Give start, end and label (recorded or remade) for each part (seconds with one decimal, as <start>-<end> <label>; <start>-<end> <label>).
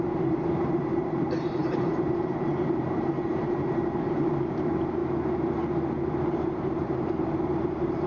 0.0-5.0 remade; 5.0-6.2 recorded; 6.2-8.1 remade